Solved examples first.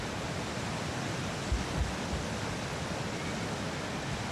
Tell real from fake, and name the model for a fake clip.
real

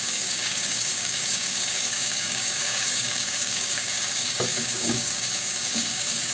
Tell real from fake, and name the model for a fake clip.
fake, codec, DAC